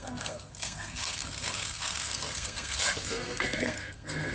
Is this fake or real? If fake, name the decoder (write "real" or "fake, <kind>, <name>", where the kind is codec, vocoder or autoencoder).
fake, codec, SNAC